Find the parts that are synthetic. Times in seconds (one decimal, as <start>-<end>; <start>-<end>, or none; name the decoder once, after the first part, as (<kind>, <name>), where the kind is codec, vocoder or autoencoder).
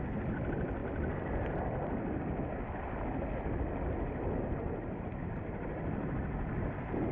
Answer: 5.2-6.1 (vocoder, BigVGAN v2)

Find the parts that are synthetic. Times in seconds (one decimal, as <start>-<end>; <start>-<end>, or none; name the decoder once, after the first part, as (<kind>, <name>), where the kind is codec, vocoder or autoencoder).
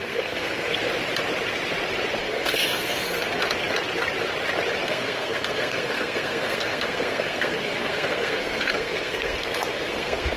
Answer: 0.0-0.7 (codec, SNAC); 2.2-3.4; 4.8-10.4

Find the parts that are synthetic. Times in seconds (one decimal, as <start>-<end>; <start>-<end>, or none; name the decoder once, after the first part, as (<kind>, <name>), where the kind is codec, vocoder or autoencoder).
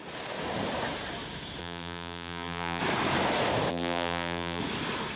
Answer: 1.6-2.8 (vocoder, BigVGAN v2); 3.7-4.6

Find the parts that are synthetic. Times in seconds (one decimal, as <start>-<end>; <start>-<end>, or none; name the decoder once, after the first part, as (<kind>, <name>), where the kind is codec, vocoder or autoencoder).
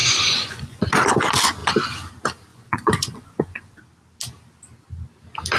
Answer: 0.0-0.8 (vocoder, Vocos); 2.5-3.8